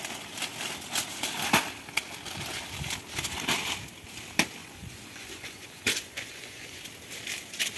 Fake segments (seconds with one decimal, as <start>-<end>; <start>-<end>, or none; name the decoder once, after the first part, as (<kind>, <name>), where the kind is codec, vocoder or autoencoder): 4.6-6.8 (vocoder, Vocos)